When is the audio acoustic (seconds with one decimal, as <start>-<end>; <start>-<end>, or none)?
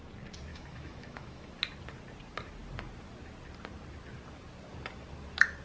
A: 0.0-0.5; 1.5-5.6